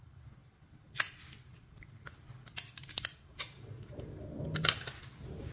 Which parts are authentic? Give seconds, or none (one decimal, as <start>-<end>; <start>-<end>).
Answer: 0.0-5.5